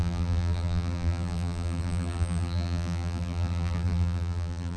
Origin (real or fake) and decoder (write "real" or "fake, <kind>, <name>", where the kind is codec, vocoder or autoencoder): fake, vocoder, BigVGAN v2